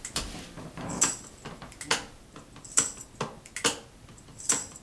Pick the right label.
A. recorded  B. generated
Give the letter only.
A